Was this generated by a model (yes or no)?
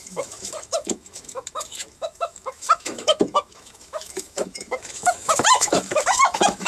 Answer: yes